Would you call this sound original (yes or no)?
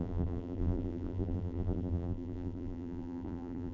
no